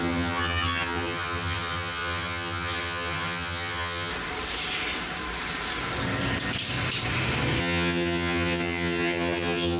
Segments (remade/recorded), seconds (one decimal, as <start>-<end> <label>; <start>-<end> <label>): 0.0-4.1 remade; 4.1-7.6 recorded; 7.6-9.8 remade